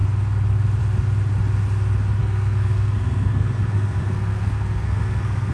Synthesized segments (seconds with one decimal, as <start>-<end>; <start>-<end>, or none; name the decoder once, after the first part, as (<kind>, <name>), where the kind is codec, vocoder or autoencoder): 2.2-5.5 (codec, SNAC)